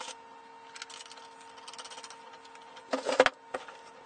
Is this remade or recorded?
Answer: recorded